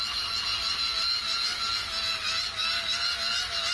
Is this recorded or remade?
recorded